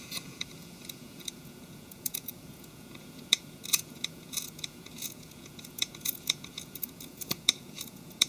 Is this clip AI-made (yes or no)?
yes